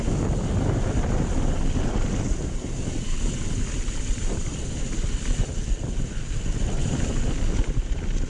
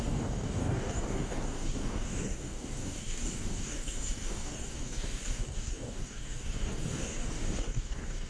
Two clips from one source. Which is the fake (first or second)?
second